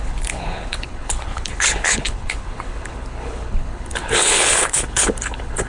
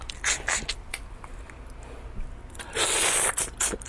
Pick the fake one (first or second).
first